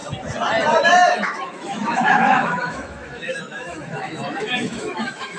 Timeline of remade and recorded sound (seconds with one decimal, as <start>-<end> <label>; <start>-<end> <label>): 0.0-0.8 recorded; 0.8-5.4 remade